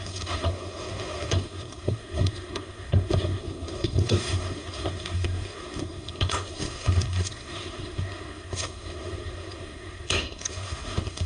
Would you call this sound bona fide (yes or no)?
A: no